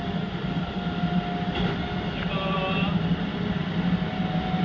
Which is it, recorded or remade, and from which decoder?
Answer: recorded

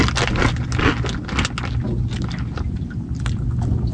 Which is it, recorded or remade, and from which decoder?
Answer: recorded